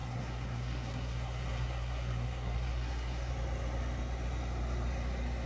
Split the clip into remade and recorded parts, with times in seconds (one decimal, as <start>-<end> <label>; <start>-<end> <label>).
0.0-3.3 remade; 3.3-5.5 recorded